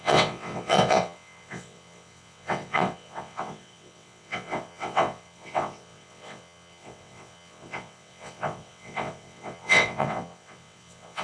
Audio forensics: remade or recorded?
remade